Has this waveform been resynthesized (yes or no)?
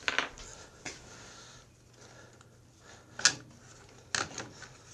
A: no